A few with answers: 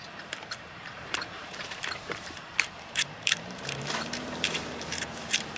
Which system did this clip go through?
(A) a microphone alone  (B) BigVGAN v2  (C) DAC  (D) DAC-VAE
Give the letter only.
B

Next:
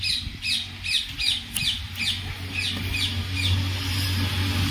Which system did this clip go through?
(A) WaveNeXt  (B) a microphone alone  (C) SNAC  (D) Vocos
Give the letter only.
B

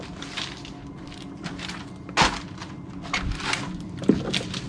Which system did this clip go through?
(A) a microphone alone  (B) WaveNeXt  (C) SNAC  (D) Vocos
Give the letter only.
A